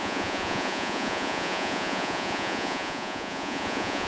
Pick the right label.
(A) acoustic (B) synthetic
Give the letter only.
B